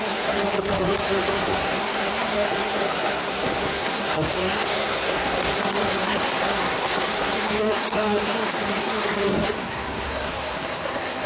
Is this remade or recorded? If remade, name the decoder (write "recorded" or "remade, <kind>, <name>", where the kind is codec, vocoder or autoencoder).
remade, codec, SNAC